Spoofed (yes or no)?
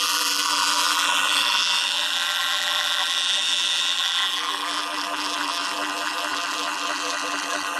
yes